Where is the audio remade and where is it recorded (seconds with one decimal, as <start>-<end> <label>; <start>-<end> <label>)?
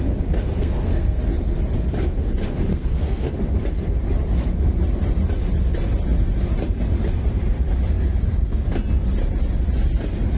0.0-0.6 recorded; 0.6-1.2 remade; 1.2-2.7 recorded; 2.7-3.3 remade; 3.3-10.4 recorded